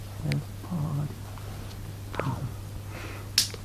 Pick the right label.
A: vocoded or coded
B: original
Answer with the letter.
B